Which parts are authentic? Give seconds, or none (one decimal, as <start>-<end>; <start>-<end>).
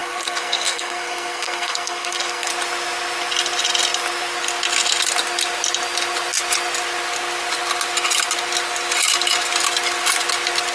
2.5-10.7